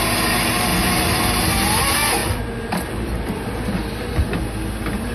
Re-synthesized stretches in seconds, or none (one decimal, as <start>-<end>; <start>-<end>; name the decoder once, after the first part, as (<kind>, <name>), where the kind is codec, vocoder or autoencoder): 0.7-1.2 (vocoder, BigVGAN v2); 2.2-4.1